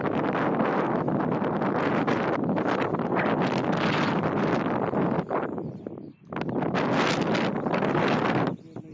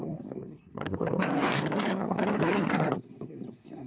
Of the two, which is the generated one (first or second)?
second